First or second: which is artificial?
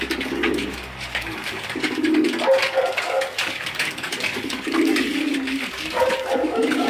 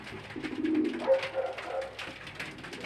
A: first